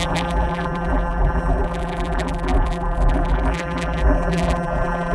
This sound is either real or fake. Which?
fake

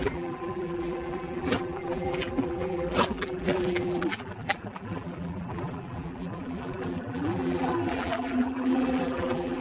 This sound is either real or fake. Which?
fake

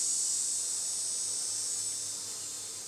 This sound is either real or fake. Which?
fake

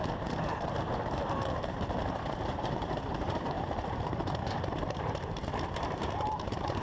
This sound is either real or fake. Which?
fake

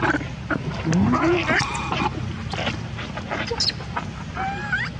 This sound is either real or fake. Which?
real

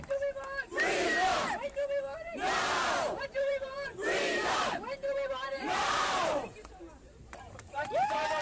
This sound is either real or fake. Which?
fake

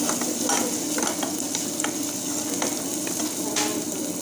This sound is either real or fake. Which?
real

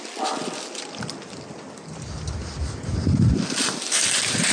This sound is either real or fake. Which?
real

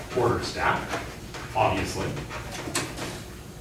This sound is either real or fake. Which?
real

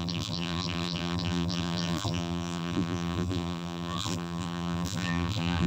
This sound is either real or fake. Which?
fake